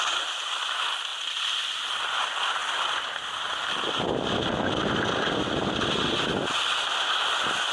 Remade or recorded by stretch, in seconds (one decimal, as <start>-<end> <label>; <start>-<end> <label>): 0.0-7.7 recorded